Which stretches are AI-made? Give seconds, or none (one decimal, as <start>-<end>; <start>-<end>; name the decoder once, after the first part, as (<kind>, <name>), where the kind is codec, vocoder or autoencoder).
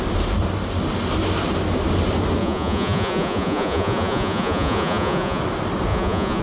2.4-5.4 (vocoder, Vocos); 5.9-6.4